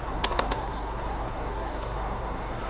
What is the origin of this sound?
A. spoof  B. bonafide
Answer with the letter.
A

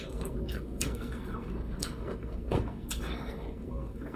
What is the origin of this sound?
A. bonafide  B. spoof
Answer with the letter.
B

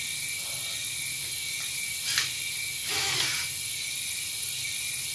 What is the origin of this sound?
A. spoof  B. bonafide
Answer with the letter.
B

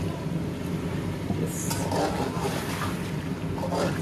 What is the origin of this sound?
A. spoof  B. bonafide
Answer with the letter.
B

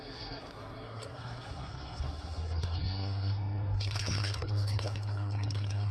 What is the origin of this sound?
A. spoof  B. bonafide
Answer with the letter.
A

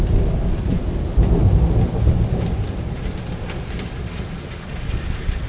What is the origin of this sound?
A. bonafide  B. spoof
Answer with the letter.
A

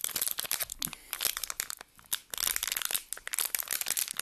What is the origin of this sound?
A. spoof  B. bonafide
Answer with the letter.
B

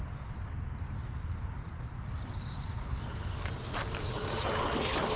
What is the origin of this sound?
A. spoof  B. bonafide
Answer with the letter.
B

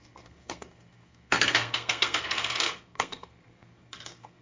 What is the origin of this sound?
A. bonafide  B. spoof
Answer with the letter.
B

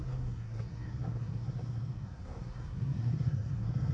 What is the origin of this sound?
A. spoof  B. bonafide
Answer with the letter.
A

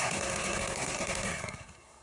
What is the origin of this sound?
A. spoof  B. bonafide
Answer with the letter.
A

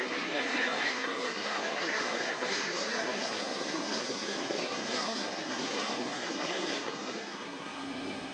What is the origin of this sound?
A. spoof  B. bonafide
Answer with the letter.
A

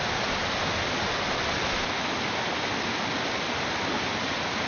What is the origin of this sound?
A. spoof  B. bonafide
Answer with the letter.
B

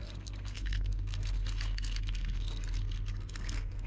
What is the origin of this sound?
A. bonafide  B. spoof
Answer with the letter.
B